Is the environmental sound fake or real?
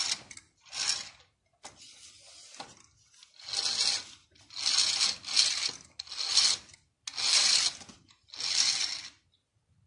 real